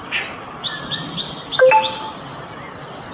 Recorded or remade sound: recorded